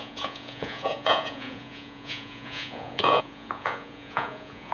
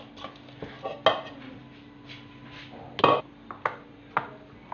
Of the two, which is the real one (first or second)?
second